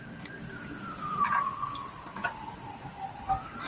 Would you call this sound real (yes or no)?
yes